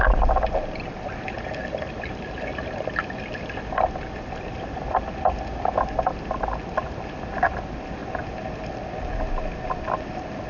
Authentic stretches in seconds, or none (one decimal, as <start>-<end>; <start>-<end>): 0.0-10.5